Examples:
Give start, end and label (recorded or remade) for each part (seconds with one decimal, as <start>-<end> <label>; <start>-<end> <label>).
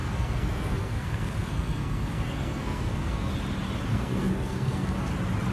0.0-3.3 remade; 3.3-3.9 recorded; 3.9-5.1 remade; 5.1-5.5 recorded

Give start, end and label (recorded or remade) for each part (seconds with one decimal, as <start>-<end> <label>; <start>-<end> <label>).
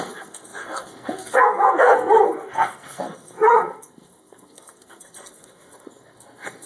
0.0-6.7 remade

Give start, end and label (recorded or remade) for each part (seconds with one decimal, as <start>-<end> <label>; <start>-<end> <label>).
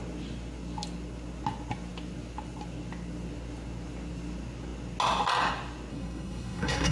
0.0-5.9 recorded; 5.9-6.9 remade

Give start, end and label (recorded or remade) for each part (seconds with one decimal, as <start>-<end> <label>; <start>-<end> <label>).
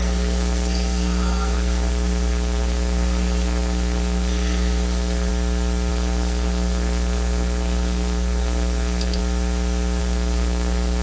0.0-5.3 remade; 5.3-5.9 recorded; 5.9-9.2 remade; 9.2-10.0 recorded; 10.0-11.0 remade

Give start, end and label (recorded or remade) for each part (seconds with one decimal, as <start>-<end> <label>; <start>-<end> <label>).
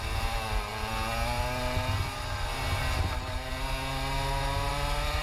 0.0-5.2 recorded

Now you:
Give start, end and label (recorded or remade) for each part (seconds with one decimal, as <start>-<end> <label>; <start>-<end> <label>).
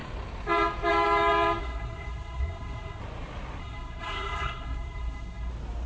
0.0-1.6 recorded; 1.6-3.0 remade; 3.0-3.6 recorded; 3.6-5.5 remade; 5.5-5.9 recorded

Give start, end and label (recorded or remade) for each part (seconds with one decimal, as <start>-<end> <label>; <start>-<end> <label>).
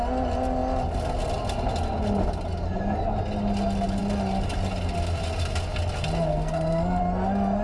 0.0-6.3 recorded; 6.3-7.0 remade; 7.0-7.6 recorded